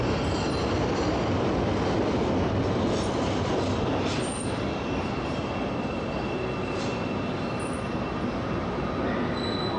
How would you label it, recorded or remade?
recorded